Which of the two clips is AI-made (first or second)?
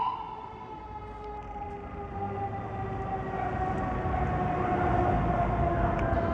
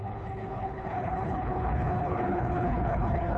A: second